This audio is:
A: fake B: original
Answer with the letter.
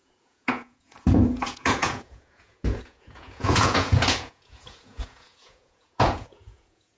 A